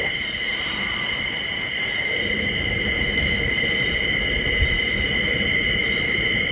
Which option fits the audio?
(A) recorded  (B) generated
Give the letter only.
B